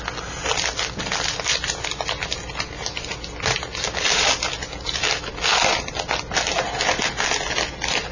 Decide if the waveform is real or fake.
real